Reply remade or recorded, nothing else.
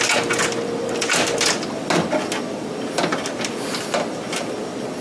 recorded